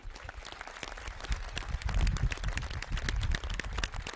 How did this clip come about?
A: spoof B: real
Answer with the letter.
B